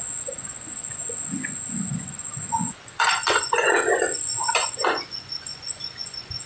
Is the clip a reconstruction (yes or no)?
yes